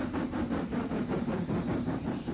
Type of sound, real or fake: fake